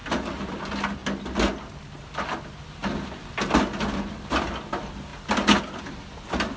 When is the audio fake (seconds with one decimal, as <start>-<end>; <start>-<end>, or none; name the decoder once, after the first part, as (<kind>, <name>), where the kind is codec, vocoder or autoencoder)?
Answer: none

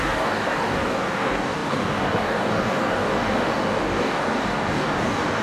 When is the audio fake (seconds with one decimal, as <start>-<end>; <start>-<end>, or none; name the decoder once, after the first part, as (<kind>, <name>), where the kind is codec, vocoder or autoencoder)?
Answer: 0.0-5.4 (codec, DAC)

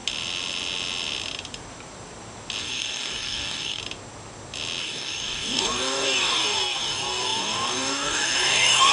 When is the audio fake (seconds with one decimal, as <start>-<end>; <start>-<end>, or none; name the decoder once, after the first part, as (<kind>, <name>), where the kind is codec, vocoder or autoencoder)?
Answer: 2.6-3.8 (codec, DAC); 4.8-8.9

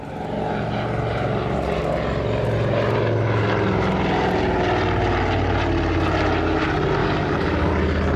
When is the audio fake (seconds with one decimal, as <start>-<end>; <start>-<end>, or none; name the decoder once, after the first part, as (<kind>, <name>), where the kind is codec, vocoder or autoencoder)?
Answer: 7.0-7.7 (codec, DAC)

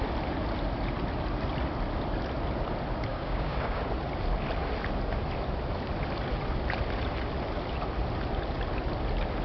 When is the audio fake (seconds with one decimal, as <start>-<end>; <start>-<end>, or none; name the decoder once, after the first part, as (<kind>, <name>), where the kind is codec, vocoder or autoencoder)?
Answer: 3.1-3.8 (codec, DAC)

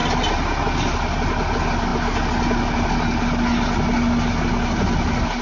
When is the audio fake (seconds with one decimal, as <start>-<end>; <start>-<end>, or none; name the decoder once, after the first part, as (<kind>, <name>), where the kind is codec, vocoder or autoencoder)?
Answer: none

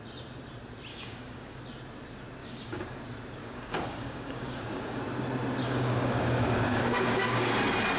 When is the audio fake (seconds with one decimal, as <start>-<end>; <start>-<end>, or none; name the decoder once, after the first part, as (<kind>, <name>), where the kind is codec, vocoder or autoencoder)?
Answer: 0.9-1.6 (codec, DAC); 2.4-3.0; 3.4-5.0; 5.6-7.5

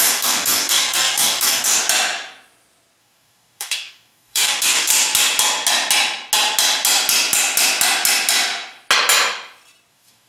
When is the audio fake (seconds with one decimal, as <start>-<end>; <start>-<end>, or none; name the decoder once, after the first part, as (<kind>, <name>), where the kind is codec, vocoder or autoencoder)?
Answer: 0.0-1.8 (codec, DAC); 3.0-4.9; 9.9-10.3